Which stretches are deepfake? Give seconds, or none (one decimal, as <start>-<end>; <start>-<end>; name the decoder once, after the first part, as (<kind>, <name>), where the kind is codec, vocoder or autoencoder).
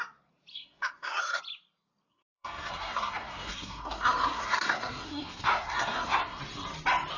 0.5-1.4 (codec, SNAC); 2.1-6.4